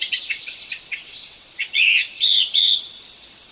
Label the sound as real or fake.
fake